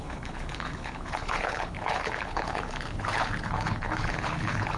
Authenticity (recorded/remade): remade